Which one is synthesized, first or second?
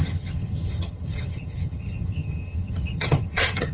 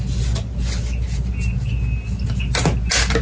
first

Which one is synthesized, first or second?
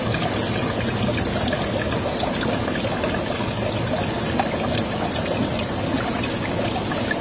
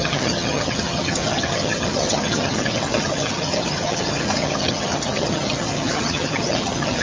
second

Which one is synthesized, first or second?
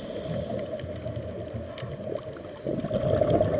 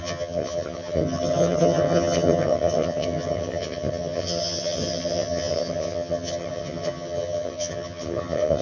second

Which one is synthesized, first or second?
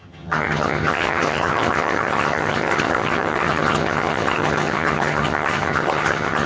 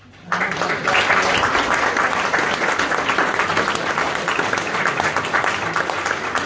first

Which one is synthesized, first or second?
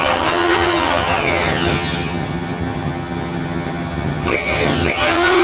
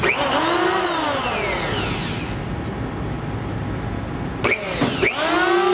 first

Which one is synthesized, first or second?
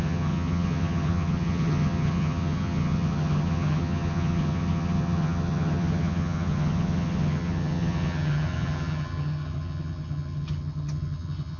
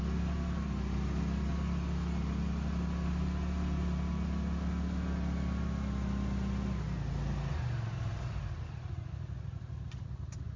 first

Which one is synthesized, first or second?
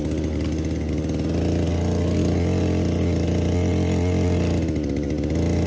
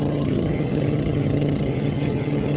second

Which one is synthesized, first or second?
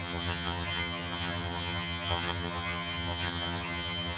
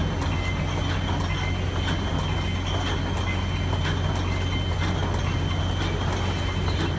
first